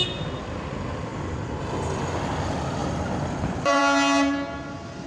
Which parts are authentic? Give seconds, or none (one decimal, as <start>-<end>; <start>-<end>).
0.0-1.1; 1.6-2.8; 3.8-5.1